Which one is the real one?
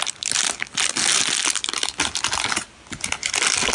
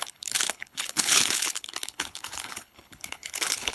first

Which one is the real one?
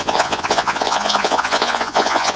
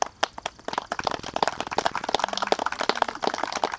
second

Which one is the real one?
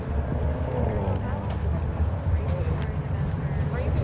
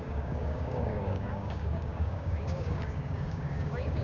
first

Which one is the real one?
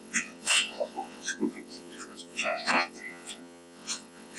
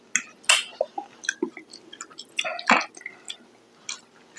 second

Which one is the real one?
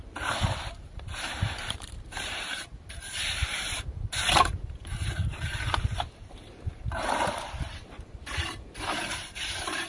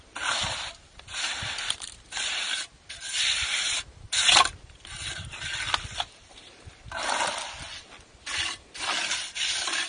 second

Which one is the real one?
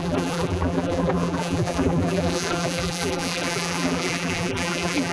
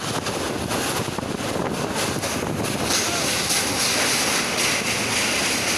second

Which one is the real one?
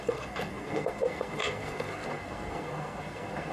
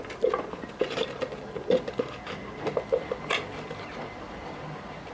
second